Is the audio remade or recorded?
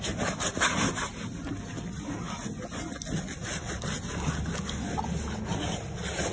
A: recorded